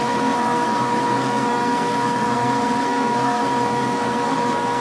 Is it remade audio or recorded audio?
remade